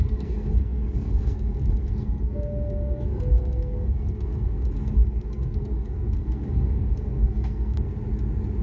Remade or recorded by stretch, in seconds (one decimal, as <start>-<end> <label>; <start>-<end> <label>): 0.0-7.9 remade; 7.9-8.6 recorded